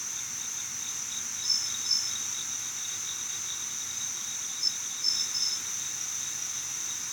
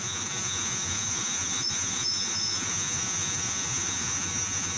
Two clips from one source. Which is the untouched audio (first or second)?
first